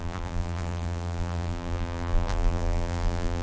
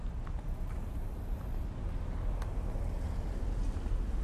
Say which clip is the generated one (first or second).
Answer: first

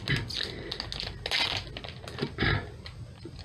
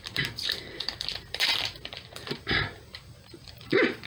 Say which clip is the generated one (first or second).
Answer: second